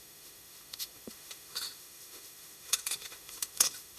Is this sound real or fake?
fake